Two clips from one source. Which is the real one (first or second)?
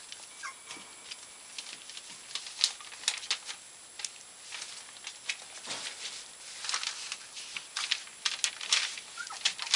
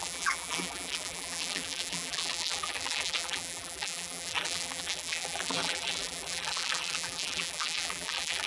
first